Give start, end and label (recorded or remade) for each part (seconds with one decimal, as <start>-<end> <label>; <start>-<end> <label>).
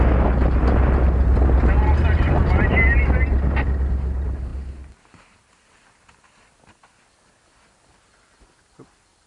0.0-9.3 recorded